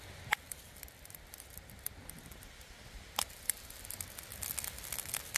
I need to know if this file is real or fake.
real